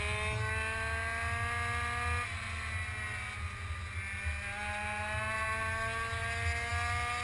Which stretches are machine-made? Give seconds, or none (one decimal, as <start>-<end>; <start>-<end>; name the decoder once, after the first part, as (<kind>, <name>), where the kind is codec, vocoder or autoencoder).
none